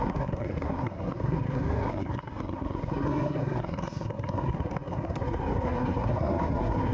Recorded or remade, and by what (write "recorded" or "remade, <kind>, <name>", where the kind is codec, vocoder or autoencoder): remade, codec, SNAC